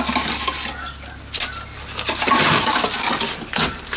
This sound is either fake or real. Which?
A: real